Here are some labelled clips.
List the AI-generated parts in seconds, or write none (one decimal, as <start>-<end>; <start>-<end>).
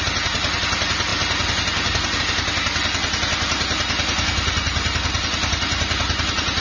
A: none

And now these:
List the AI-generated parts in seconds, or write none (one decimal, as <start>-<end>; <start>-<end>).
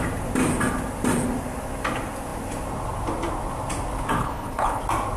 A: 4.2-4.8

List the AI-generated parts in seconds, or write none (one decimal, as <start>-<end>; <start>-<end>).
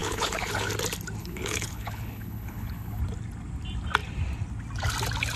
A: 0.0-0.7; 1.2-3.0